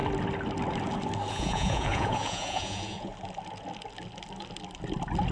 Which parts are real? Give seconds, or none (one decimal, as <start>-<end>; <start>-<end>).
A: 0.0-1.3; 3.1-5.3